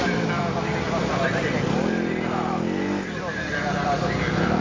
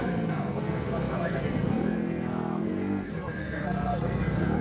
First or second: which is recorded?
first